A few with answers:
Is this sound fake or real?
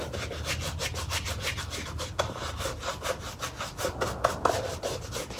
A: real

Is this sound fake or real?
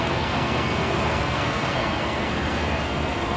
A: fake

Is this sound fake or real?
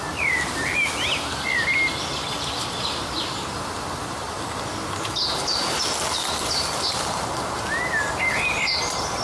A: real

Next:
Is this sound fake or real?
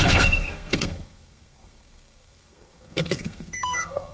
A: fake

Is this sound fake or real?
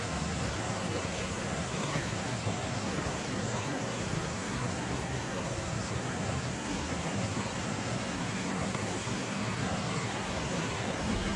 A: fake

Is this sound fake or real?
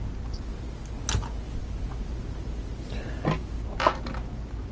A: real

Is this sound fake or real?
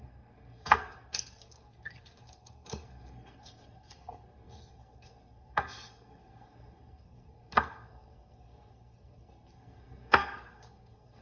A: fake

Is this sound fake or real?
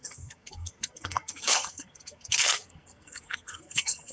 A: fake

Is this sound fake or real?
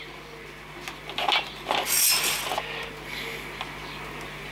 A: real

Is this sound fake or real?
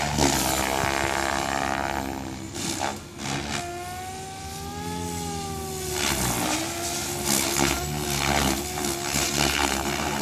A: real